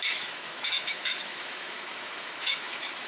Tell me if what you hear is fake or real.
fake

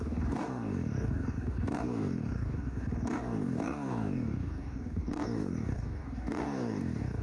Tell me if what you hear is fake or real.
fake